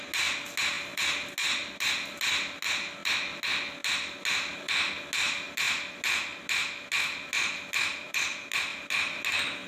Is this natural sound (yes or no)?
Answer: yes